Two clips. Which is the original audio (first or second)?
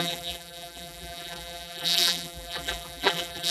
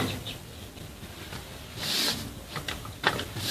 second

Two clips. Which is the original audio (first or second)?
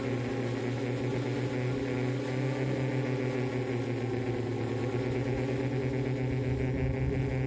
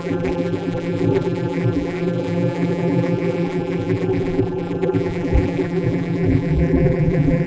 first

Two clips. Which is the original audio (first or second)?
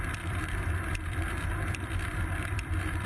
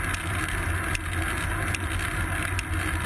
second